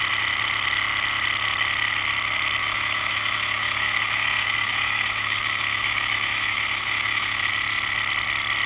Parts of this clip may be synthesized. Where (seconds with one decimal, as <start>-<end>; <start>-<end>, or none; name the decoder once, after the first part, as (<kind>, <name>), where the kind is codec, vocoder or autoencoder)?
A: 2.6-7.5 (autoencoder, DAC-VAE)

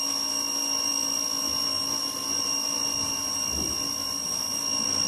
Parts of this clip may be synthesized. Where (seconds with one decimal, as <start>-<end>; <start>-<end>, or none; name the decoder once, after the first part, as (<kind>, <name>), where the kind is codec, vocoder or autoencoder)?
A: none

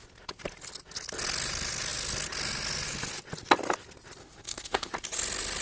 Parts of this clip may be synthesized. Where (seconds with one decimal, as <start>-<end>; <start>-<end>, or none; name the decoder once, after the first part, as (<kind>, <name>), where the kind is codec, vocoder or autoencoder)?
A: 4.2-4.9 (autoencoder, DAC-VAE)

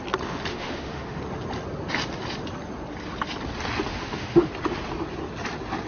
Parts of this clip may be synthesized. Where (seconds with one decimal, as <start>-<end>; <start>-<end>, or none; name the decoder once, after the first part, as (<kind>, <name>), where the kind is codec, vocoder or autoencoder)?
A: 0.5-1.2 (autoencoder, DAC-VAE); 3.9-4.5